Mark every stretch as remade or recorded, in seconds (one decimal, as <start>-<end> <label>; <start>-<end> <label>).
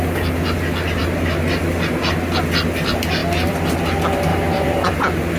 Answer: 0.0-3.2 recorded; 3.2-3.7 remade; 3.7-4.3 recorded; 4.3-4.9 remade; 4.9-5.4 recorded